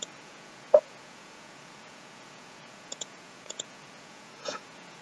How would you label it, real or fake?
fake